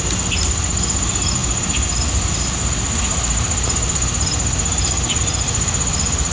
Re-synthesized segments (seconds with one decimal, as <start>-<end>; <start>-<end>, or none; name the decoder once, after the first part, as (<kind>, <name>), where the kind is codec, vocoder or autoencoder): none